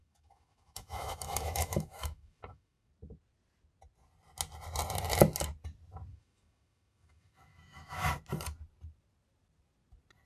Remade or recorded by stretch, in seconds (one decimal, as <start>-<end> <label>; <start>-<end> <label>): 0.0-2.9 remade; 2.9-6.1 recorded; 6.1-8.1 remade; 8.1-10.3 recorded